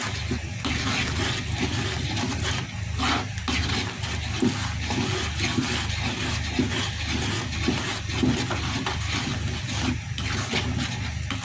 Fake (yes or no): no